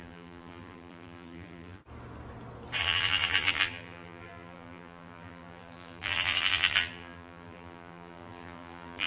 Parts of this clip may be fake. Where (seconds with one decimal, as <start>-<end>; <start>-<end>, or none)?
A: 0.0-1.8; 2.8-9.1